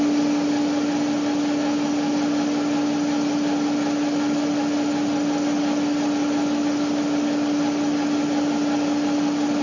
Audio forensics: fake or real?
real